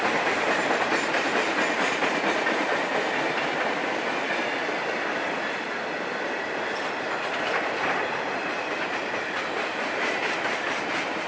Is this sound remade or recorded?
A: recorded